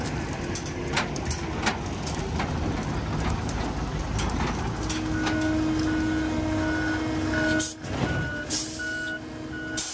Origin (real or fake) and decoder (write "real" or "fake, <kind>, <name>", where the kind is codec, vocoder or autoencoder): real